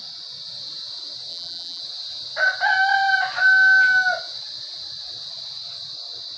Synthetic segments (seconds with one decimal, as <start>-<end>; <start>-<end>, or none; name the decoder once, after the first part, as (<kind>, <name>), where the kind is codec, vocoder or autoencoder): 1.3-1.8 (vocoder, BigVGAN v2)